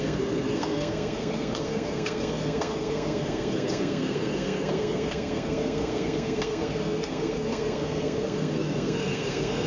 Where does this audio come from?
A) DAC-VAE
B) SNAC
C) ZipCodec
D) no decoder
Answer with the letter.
B